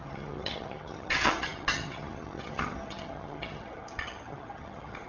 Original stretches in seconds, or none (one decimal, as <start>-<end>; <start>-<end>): none